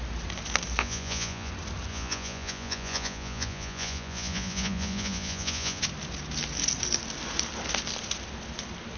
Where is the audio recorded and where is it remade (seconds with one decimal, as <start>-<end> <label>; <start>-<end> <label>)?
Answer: 0.0-0.8 recorded; 0.8-1.5 remade; 1.5-1.9 recorded; 1.9-5.8 remade; 5.8-9.0 recorded